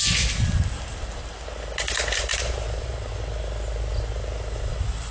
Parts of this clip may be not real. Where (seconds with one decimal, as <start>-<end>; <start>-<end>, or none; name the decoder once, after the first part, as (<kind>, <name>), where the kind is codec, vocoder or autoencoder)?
2.3-3.1 (vocoder, BigVGAN v2)